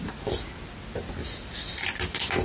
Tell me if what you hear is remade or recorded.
recorded